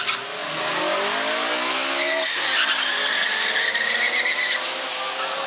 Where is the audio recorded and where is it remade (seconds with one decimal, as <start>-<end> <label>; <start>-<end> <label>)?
0.0-5.5 recorded

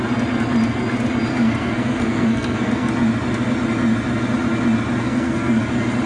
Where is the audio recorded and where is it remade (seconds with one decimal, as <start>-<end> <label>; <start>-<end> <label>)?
0.0-1.3 recorded; 1.3-2.9 remade; 2.9-5.0 recorded; 5.0-5.6 remade; 5.6-6.1 recorded

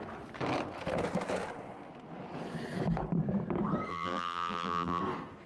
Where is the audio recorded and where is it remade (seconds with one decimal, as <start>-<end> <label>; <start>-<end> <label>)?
0.0-3.9 recorded; 3.9-5.0 remade; 5.0-5.5 recorded